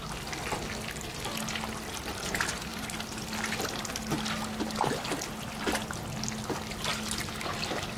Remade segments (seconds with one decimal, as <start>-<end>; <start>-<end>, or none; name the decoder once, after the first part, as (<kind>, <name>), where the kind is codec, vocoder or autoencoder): none